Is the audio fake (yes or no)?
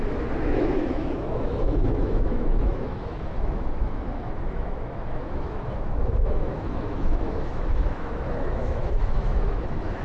yes